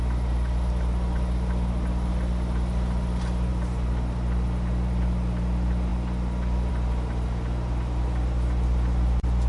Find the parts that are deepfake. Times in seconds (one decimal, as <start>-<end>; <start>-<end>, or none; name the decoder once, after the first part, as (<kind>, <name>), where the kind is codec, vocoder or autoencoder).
none